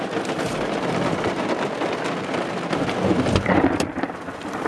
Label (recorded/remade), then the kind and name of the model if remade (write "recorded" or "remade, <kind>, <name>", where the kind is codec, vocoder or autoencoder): remade, vocoder, BigVGAN v2